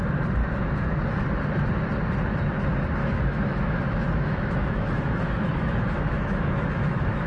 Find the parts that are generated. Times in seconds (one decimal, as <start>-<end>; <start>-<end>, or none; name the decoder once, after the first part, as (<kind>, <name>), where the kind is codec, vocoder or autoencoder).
0.4-1.0 (autoencoder, DAC-VAE); 3.0-7.3